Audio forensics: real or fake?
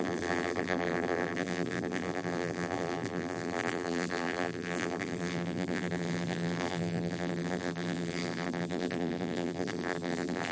fake